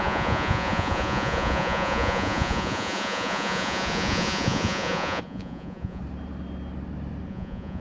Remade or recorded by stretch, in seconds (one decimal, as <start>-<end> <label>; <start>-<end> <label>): 0.0-6.0 remade; 6.0-7.3 recorded; 7.3-7.8 remade